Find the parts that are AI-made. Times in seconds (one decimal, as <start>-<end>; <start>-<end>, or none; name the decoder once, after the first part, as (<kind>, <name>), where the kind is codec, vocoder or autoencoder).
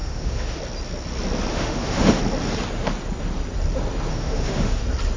0.0-0.6 (autoencoder, DAC-VAE); 1.5-2.2; 4.1-4.8